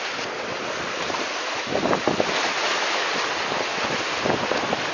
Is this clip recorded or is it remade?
recorded